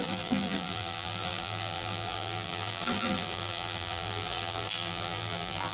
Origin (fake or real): fake